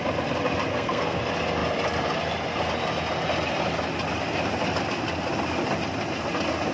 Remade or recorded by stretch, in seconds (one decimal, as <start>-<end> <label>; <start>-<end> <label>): 0.0-0.7 recorded; 0.7-1.2 remade; 1.2-6.7 recorded